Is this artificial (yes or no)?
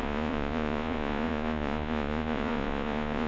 yes